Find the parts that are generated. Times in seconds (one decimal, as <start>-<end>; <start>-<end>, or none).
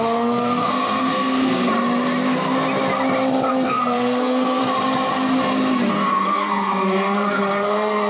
0.0-1.7; 3.5-4.6; 5.9-8.1